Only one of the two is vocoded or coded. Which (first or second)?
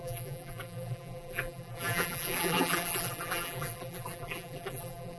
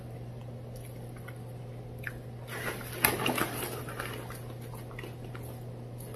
first